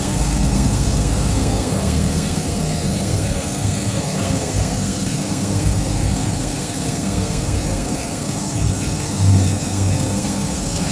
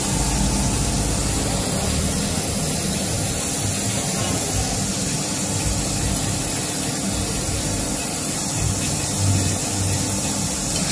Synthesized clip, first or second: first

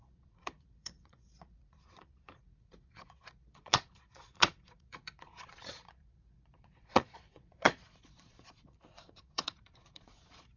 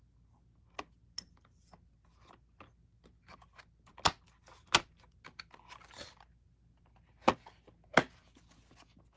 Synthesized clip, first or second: first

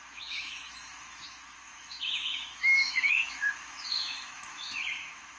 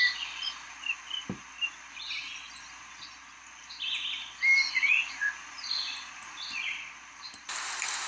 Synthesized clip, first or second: first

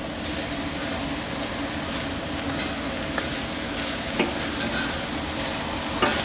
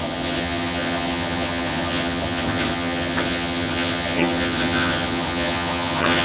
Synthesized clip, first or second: second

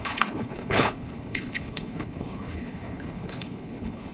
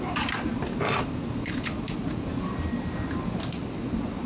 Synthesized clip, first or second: first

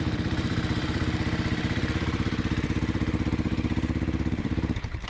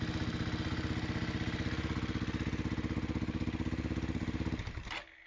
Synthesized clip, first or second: first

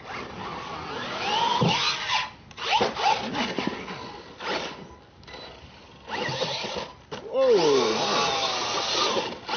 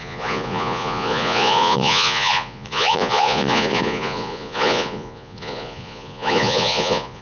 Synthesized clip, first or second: second